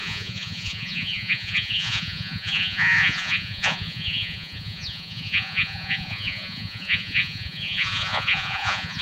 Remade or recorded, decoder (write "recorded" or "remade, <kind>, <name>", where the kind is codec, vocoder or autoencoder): remade, vocoder, Vocos